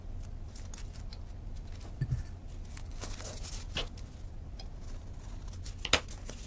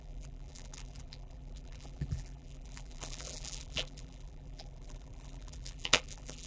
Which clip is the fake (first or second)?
second